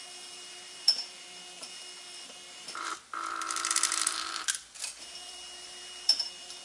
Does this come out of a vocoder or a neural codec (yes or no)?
yes